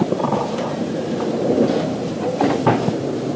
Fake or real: fake